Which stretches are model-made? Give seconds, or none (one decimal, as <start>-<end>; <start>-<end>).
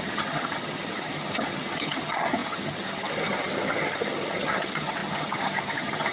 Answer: 0.0-6.1